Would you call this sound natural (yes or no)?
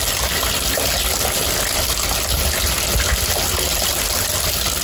yes